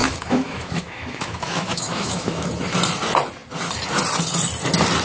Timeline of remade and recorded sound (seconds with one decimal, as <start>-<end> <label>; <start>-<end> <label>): 0.0-2.5 remade; 2.5-5.0 recorded